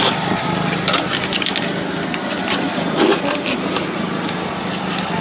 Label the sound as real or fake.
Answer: real